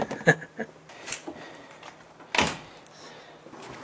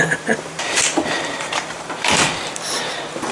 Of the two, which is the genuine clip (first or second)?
first